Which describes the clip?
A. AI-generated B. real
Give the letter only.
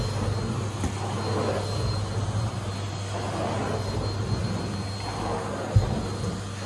B